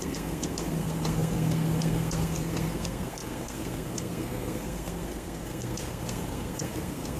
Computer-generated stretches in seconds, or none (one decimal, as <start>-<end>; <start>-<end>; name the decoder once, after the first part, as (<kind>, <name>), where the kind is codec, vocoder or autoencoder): 0.0-7.2 (codec, SNAC)